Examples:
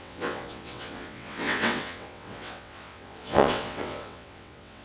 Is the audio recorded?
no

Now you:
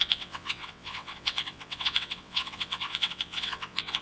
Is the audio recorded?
no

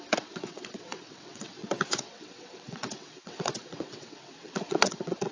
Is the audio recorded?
no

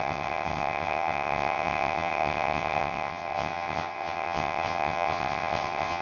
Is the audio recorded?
no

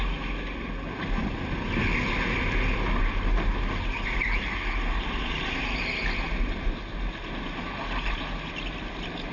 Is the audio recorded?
yes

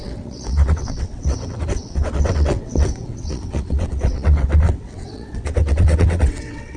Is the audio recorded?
no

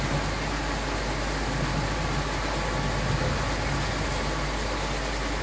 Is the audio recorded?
yes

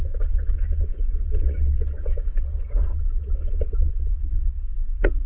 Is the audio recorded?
no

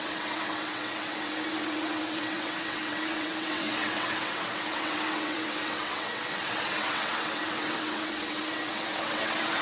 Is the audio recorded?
no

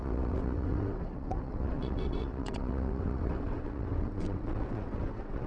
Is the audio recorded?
no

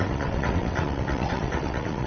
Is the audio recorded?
no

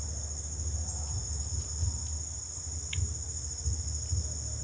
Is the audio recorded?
yes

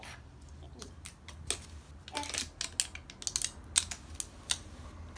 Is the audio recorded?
yes